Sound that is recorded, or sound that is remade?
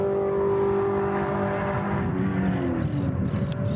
recorded